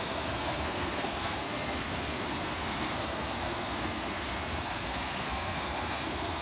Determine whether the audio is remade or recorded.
remade